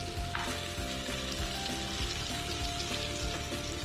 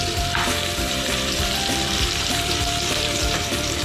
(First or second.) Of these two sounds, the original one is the first